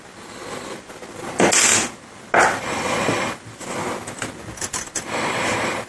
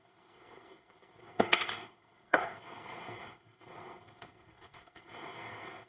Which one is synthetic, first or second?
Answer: second